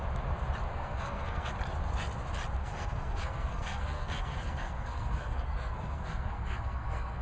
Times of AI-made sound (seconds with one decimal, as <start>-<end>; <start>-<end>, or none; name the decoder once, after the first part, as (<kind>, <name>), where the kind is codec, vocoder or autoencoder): 0.7-1.5 (codec, SNAC); 2.6-7.2